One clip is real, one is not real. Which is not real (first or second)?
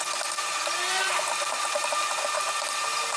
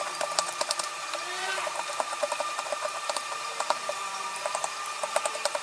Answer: second